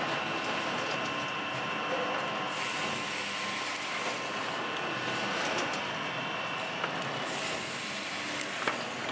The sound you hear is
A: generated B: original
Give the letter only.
B